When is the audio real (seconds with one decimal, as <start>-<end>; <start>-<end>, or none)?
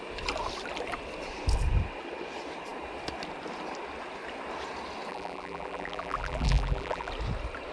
0.0-5.1; 7.1-7.7